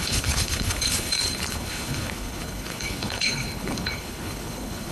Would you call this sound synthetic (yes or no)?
yes